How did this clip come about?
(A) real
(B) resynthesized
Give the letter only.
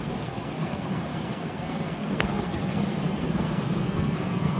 B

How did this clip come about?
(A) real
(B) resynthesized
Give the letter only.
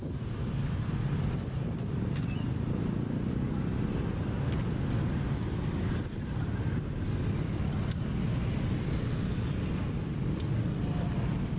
A